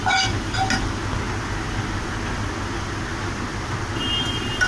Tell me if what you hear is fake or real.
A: real